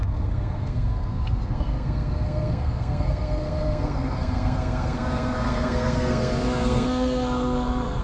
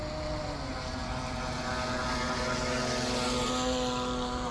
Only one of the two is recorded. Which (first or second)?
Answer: second